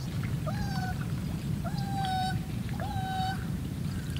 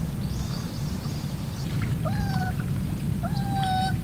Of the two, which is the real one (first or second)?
second